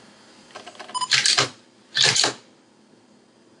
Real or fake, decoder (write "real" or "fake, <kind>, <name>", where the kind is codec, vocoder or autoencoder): real